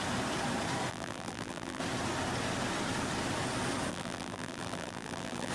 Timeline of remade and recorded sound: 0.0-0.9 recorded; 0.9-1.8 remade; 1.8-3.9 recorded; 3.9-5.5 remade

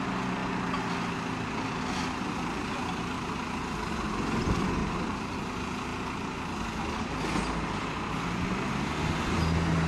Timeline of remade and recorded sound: 0.0-4.8 recorded; 4.8-5.4 remade; 5.4-9.9 recorded

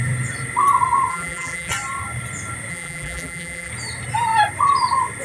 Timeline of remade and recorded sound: 0.0-1.1 recorded; 1.1-1.7 remade; 1.7-2.7 recorded; 2.7-3.7 remade; 3.7-5.2 recorded

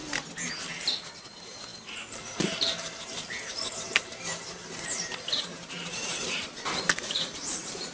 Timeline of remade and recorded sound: 0.0-0.5 recorded; 0.5-7.9 remade

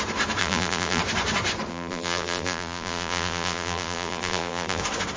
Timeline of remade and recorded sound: 0.0-0.4 recorded; 0.4-1.0 remade; 1.0-1.7 recorded; 1.7-4.8 remade; 4.8-5.2 recorded

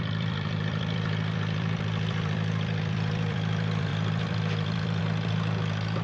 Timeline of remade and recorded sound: 0.0-6.0 remade

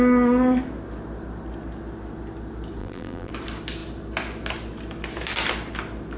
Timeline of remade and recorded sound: 0.0-2.8 recorded; 2.8-3.3 remade; 3.3-6.2 recorded